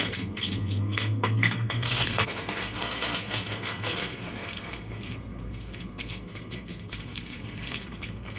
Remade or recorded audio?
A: remade